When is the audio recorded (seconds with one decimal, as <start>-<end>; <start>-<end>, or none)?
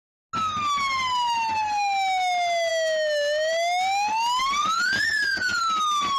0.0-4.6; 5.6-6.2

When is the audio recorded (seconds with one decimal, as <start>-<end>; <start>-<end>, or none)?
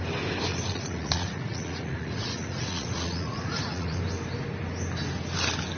0.0-0.5; 4.0-5.8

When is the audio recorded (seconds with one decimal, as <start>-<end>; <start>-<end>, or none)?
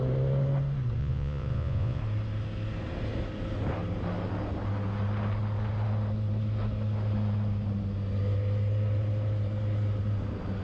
0.0-1.0; 2.0-10.6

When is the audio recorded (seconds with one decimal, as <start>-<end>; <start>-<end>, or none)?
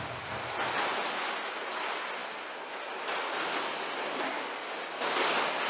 0.0-5.7